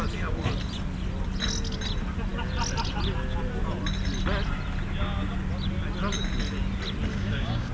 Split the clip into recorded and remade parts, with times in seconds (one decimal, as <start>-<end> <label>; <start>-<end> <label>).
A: 0.0-7.1 recorded; 7.1-7.7 remade